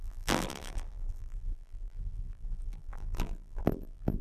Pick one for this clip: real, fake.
fake